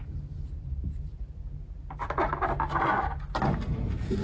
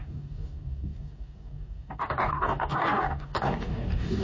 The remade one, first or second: second